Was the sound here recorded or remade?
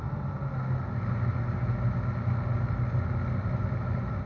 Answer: recorded